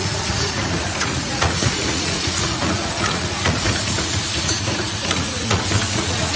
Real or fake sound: fake